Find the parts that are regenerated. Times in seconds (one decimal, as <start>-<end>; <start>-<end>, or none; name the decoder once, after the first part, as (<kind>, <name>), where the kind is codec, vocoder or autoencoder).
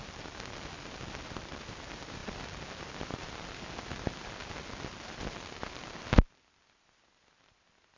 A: none